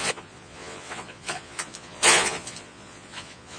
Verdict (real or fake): fake